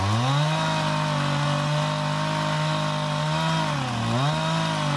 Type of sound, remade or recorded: recorded